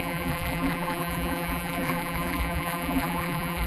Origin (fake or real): fake